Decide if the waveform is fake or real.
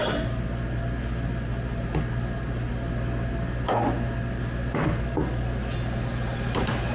real